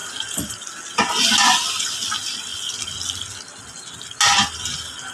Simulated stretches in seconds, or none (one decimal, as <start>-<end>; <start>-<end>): none